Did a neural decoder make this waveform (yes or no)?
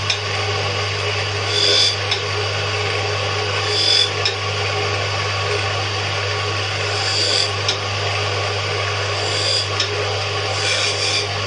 no